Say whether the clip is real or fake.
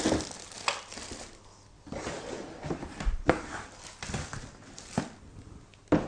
real